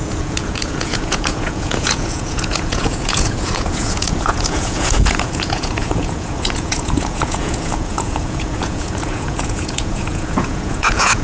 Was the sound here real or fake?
fake